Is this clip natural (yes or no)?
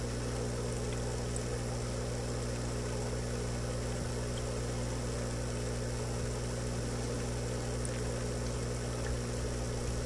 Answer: yes